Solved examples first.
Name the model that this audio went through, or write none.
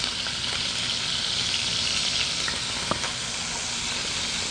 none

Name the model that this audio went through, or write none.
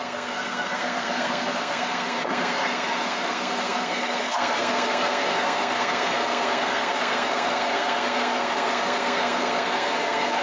codec, SNAC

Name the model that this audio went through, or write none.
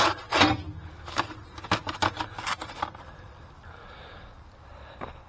none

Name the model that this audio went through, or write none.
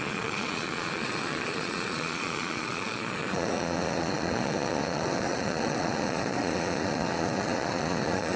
vocoder, Vocos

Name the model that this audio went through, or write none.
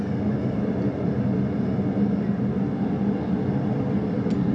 none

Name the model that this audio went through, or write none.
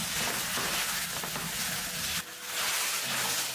none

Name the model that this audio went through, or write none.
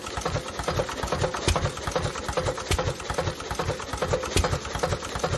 none